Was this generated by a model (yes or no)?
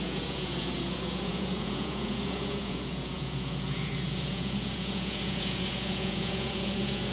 yes